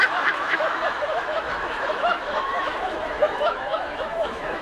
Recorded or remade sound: remade